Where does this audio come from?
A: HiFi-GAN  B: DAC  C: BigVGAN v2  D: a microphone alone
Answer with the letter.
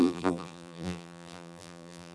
C